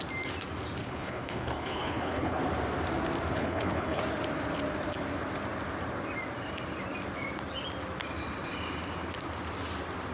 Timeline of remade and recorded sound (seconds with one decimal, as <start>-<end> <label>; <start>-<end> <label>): 0.0-0.8 recorded; 0.8-2.4 remade; 2.4-3.4 recorded; 3.4-4.0 remade; 4.0-10.1 recorded